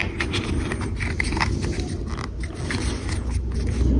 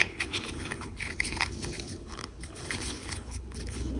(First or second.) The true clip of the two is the first